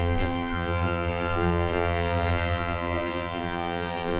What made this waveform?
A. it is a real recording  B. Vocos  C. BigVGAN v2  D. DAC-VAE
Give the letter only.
C